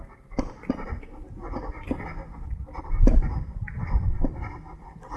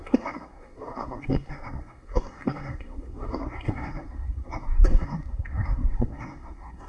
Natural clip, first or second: first